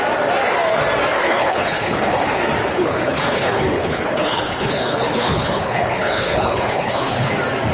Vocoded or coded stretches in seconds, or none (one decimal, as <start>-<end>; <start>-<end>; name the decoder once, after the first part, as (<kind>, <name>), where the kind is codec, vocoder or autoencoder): 1.2-2.4 (codec, HILCodec); 2.8-7.3